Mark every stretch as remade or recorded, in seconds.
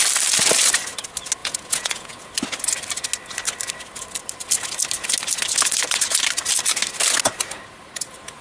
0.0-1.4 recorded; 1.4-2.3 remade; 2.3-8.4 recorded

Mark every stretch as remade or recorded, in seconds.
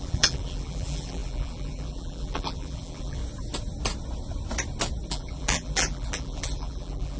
0.0-3.2 remade; 3.2-5.1 recorded; 5.1-7.2 remade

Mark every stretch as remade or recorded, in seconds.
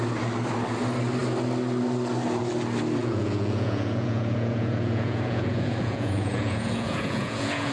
0.0-3.0 recorded; 3.0-7.7 remade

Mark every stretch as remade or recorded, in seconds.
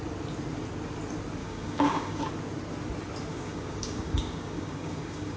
0.0-1.4 recorded; 1.4-2.2 remade; 2.2-3.3 recorded; 3.3-5.4 remade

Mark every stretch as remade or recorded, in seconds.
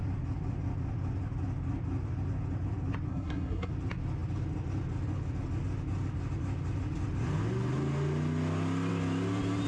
0.0-3.1 recorded; 3.1-3.7 remade; 3.7-9.7 recorded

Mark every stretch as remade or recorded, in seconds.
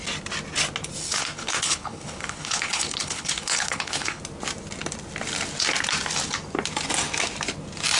0.0-1.0 recorded; 1.0-4.2 remade; 4.2-8.0 recorded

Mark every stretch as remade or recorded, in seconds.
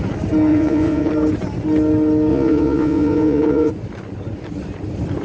0.0-0.5 recorded; 0.5-1.1 remade; 1.1-2.3 recorded; 2.3-3.7 remade; 3.7-5.2 recorded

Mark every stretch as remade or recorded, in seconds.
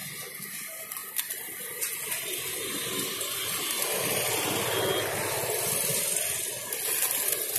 0.0-7.6 recorded